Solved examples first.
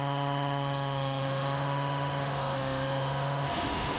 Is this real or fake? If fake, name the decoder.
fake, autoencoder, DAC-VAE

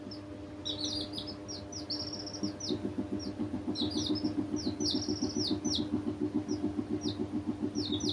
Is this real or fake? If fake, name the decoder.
real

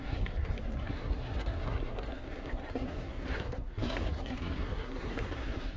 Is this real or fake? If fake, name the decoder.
fake, codec, SNAC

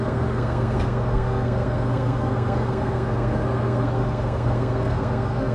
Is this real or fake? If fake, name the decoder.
fake, codec, SNAC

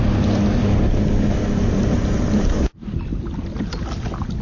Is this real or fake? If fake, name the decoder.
real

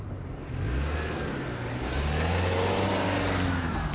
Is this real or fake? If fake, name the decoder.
real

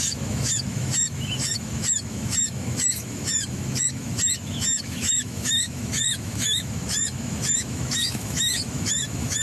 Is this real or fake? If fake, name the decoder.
fake, autoencoder, DAC-VAE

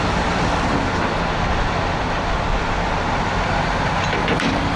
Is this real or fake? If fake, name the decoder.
real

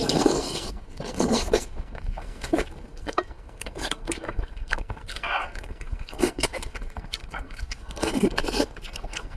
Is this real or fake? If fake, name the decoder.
fake, codec, SNAC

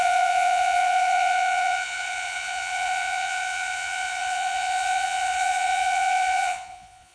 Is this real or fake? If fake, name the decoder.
fake, vocoder, Vocos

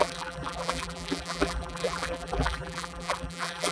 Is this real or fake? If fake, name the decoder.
fake, vocoder, BigVGAN v2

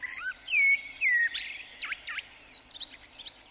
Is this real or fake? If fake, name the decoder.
fake, vocoder, BigVGAN v2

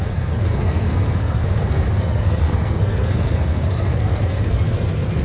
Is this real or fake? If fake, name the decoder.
fake, codec, SNAC